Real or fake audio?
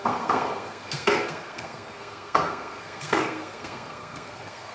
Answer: fake